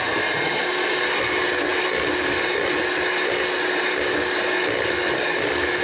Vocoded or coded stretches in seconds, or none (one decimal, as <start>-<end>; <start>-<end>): none